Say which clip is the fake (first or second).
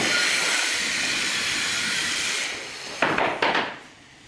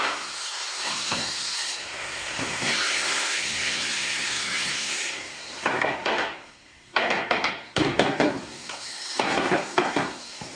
second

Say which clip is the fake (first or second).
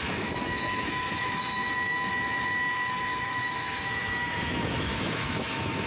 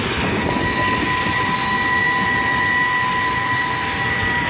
first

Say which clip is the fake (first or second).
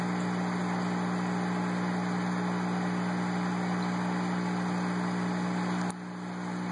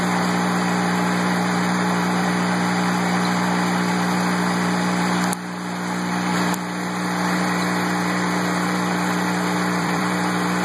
second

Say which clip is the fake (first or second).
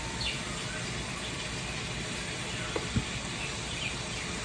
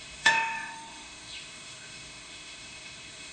second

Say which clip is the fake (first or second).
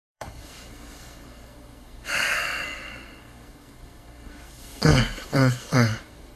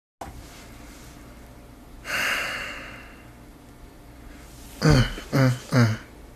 first